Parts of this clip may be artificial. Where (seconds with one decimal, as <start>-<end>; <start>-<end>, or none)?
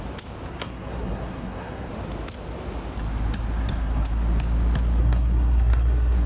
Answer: 0.5-1.9; 3.6-4.1; 5.0-6.3